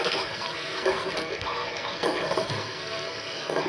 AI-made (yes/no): yes